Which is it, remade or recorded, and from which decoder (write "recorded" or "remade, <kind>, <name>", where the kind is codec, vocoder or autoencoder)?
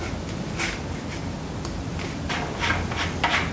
recorded